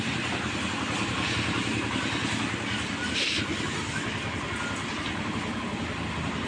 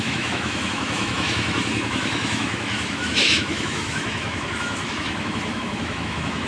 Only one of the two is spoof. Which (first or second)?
second